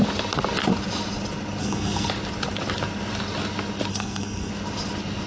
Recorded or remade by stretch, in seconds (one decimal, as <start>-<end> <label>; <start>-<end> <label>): 0.0-1.6 recorded; 1.6-2.1 remade; 2.1-3.9 recorded; 3.9-4.5 remade; 4.5-5.3 recorded